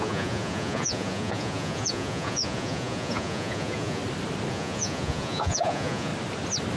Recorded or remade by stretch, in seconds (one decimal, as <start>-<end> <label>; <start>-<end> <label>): 0.0-4.0 remade; 4.0-4.5 recorded; 4.5-6.1 remade; 6.1-6.8 recorded